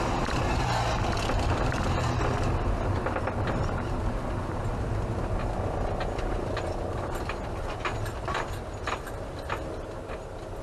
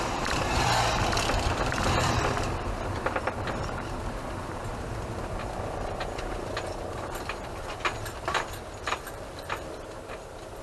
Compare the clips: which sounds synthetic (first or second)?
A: second